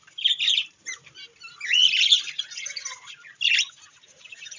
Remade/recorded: recorded